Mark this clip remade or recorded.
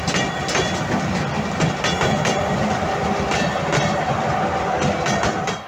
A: recorded